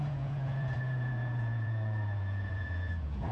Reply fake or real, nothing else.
fake